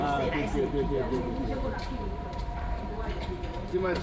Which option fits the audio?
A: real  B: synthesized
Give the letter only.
B